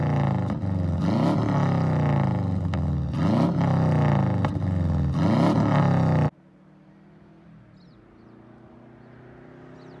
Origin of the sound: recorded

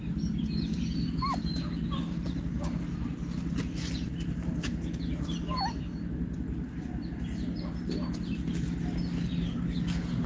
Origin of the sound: recorded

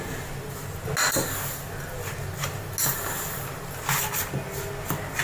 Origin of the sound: recorded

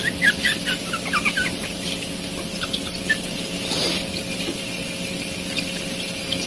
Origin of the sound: remade